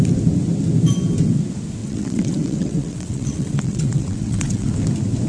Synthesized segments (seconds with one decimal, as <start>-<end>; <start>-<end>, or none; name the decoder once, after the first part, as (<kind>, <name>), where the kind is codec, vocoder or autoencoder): 1.8-4.7 (vocoder, WaveNeXt)